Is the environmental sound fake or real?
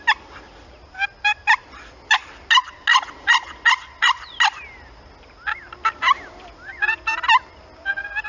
real